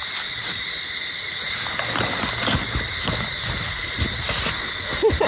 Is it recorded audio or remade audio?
recorded